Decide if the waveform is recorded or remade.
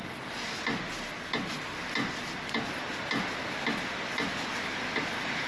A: recorded